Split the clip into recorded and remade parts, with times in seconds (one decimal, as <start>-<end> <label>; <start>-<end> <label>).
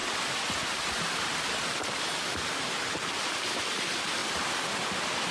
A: 0.0-5.3 recorded